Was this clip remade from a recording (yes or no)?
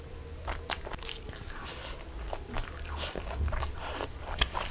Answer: no